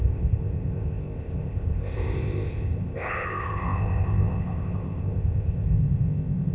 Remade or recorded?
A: remade